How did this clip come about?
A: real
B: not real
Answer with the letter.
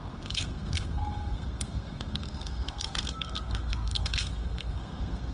B